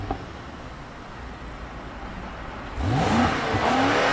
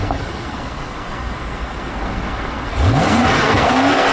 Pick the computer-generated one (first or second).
second